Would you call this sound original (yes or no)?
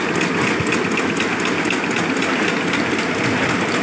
yes